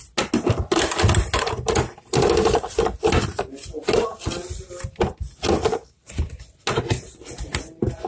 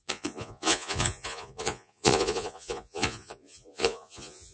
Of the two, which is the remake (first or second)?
second